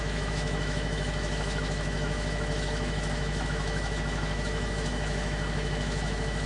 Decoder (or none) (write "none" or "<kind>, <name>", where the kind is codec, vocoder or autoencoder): autoencoder, DAC-VAE